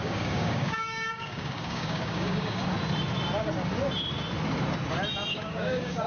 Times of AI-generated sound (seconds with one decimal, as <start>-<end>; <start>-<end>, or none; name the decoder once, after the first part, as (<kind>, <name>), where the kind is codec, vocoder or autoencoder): 0.0-2.6 (codec, DAC); 5.3-6.1

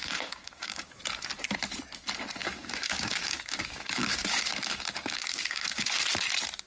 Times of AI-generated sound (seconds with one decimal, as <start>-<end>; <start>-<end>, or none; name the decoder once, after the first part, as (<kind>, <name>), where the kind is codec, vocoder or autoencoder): 0.0-0.9 (codec, DAC); 2.4-6.0

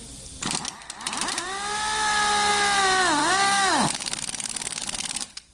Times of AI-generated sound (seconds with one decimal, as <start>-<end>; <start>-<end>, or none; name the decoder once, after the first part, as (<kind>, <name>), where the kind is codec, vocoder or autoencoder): 3.2-5.5 (codec, DAC)

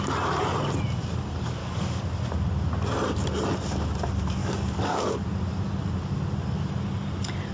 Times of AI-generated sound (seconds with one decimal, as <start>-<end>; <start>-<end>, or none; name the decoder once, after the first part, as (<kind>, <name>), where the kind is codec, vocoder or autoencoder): 1.6-2.1 (codec, DAC); 4.4-5.2

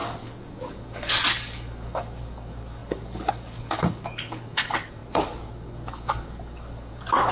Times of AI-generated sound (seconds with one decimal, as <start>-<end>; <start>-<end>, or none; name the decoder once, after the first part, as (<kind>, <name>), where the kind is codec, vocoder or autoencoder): 0.0-7.3 (codec, DAC)